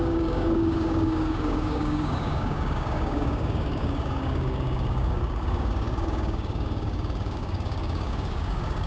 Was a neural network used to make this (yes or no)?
yes